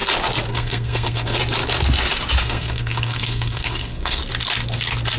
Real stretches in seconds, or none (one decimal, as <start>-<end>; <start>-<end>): 0.0-0.5; 1.4-2.4; 4.2-5.2